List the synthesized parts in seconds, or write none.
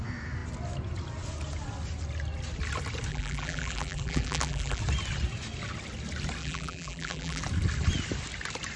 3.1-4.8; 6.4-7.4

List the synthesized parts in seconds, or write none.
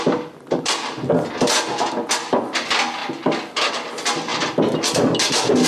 none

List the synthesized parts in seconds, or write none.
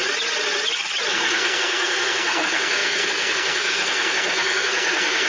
1.1-5.3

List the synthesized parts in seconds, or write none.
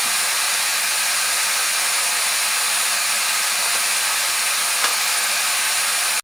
4.9-5.4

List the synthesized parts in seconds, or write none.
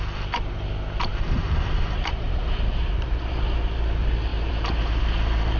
1.1-3.3; 4.3-5.0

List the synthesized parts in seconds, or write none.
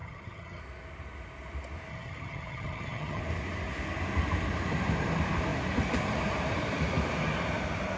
0.0-0.6; 1.9-3.2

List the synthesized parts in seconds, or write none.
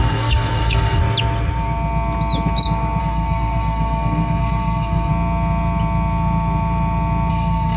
0.0-1.0; 3.0-5.1; 7.3-7.8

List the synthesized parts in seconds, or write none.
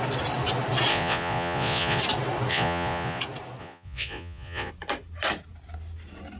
0.9-2.0; 2.5-3.2; 3.6-4.7